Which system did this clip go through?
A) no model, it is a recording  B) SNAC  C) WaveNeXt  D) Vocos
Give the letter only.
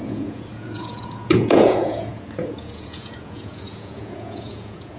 D